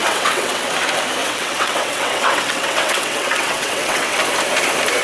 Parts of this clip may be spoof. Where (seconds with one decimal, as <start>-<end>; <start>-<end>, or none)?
0.0-0.7; 1.2-4.2